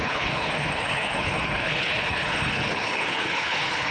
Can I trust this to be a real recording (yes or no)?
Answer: no